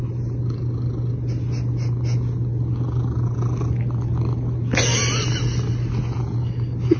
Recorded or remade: recorded